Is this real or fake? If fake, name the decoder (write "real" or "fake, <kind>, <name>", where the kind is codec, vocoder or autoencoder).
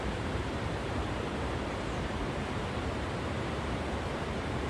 fake, vocoder, BigVGAN v2